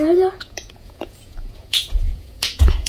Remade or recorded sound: remade